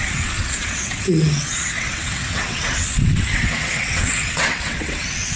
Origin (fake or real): fake